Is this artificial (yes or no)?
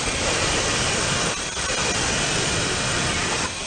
no